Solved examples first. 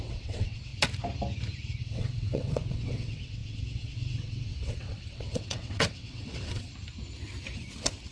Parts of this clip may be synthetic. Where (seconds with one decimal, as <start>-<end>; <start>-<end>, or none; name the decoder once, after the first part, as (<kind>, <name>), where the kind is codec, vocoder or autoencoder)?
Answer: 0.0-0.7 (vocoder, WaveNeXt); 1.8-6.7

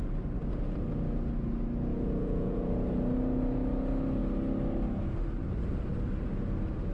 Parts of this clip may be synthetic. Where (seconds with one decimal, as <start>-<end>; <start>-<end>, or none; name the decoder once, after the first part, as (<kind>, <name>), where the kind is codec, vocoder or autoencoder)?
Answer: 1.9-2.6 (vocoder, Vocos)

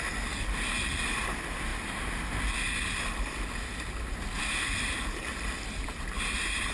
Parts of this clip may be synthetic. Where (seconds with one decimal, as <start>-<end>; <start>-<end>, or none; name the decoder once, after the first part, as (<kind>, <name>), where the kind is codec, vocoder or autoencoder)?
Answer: none

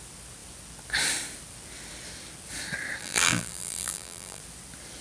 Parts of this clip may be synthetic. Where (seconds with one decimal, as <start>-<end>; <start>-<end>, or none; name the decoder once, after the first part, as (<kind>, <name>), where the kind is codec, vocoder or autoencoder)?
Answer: 3.0-4.4 (vocoder, BigVGAN v2)